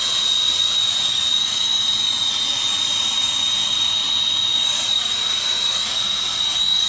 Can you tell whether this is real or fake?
fake